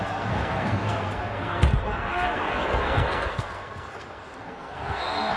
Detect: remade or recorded remade